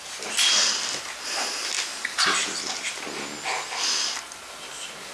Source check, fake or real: real